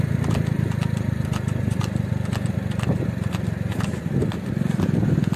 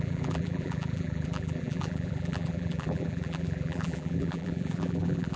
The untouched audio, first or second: first